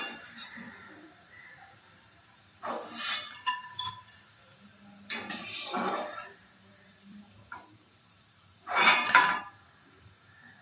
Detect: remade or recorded remade